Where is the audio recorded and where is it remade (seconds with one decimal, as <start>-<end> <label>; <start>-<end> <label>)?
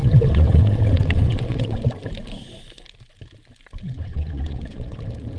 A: 0.0-1.8 remade; 1.8-3.8 recorded; 3.8-5.0 remade; 5.0-5.4 recorded